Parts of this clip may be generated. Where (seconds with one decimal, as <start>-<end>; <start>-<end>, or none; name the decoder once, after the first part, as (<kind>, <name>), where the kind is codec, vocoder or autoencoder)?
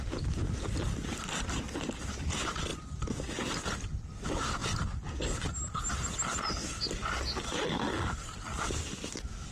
none